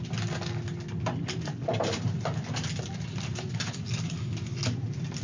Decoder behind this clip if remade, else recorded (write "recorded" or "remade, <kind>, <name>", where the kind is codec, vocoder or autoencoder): recorded